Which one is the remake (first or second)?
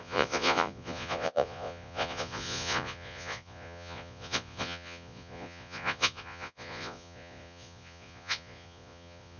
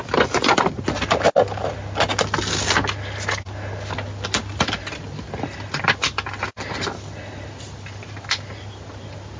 first